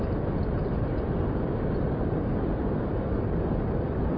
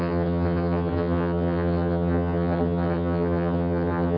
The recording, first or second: first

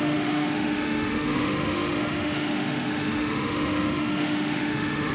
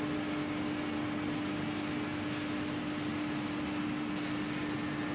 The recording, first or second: second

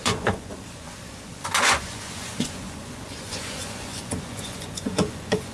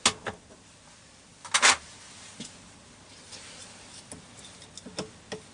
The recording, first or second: second